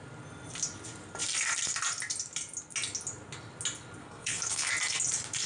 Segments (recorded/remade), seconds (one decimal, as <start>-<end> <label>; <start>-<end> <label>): 0.0-4.0 recorded; 4.0-4.7 remade; 4.7-5.5 recorded